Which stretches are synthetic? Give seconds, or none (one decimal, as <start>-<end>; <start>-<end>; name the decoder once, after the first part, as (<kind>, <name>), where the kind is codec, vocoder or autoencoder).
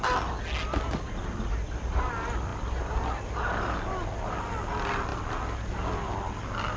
none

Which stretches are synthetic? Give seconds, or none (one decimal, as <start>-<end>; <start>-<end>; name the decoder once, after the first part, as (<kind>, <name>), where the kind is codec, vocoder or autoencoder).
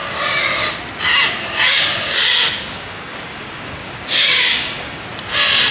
1.7-5.1 (codec, DAC)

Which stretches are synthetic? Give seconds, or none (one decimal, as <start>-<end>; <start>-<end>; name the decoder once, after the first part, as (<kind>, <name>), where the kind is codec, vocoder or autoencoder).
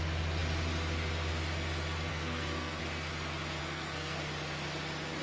2.1-2.8 (codec, SNAC); 3.6-4.3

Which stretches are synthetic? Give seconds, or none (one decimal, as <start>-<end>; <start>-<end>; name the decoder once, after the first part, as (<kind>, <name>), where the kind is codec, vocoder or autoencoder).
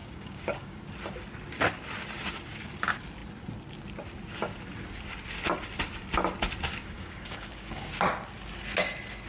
0.0-0.8 (codec, DAC); 6.7-7.9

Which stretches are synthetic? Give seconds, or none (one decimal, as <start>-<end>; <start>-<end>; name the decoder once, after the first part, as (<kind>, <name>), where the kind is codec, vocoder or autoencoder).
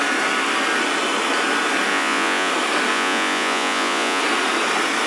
1.9-2.5 (vocoder, Vocos); 2.9-4.2